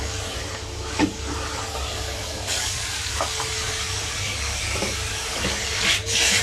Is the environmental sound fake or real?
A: fake